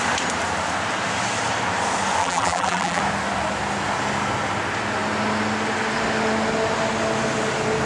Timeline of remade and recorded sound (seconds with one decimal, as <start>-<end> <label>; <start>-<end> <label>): 0.0-2.2 recorded; 2.2-3.0 remade; 3.0-7.8 recorded